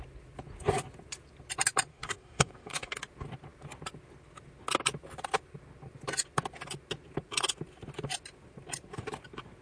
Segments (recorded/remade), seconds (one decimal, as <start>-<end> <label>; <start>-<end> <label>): 0.0-1.9 recorded; 1.9-2.9 remade; 2.9-9.6 recorded